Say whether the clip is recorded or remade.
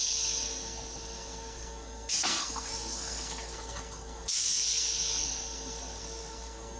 remade